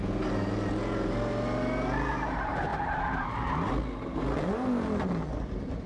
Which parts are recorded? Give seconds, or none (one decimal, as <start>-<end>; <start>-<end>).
0.0-2.1; 2.7-5.3